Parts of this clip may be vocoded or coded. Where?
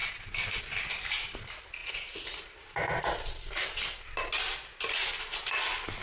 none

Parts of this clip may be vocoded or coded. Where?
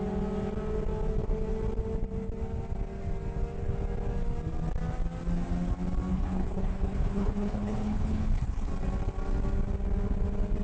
6.1-8.7 (codec, HILCodec)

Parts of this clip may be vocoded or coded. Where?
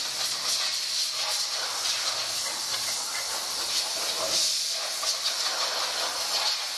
none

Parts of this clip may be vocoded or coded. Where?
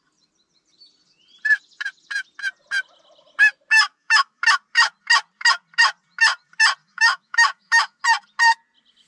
3.9-4.4 (autoencoder, DAC-VAE); 6.8-8.0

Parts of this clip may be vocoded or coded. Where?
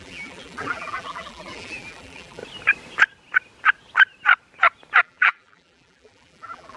0.0-2.4 (vocoder, BigVGAN v2); 5.0-6.8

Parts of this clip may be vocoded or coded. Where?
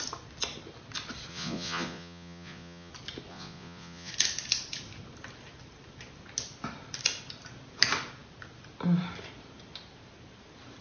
1.3-2.9 (vocoder, Vocos); 3.3-4.1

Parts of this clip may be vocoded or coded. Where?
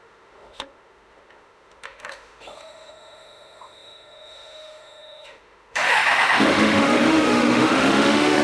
0.0-8.4 (autoencoder, DAC-VAE)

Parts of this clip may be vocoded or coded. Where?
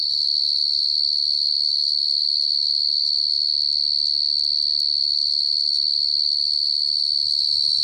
0.0-3.5 (autoencoder, DAC-VAE); 5.0-7.8